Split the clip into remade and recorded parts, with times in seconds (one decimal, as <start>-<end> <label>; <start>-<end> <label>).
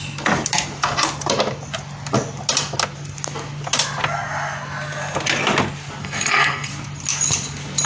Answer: 0.0-6.0 recorded; 6.0-6.7 remade; 6.7-7.9 recorded